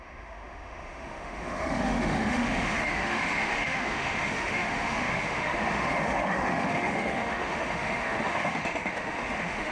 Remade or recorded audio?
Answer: remade